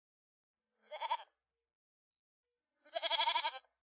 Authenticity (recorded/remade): recorded